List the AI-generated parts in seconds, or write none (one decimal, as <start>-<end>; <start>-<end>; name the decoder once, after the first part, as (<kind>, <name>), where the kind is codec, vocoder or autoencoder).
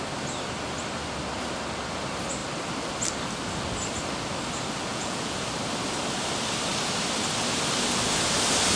4.9-5.4 (vocoder, Vocos)